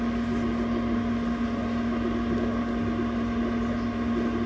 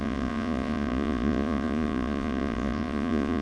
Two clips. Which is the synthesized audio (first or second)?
second